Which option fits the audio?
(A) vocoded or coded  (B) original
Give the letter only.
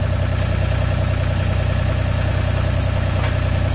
B